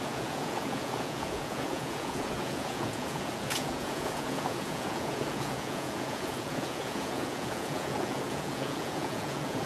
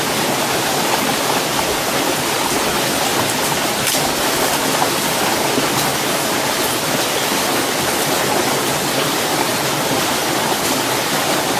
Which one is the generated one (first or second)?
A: first